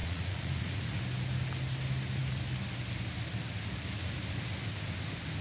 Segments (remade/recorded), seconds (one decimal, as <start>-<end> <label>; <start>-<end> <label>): 0.0-1.0 remade; 1.0-5.4 recorded